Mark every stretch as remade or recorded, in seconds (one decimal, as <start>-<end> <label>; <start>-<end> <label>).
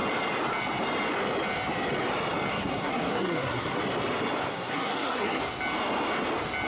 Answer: 0.0-2.5 recorded; 2.5-3.8 remade; 3.8-4.5 recorded; 4.5-5.4 remade; 5.4-6.7 recorded